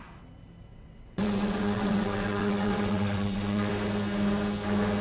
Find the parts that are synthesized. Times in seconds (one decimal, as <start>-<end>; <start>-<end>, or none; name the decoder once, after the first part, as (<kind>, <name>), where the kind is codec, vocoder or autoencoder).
0.7-3.7 (vocoder, WaveNeXt)